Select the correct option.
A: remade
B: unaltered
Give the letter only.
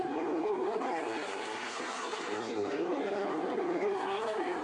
A